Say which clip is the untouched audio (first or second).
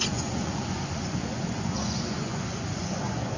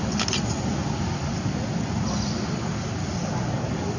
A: second